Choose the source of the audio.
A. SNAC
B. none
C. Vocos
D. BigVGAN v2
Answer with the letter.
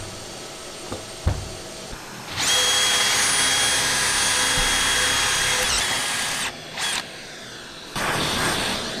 B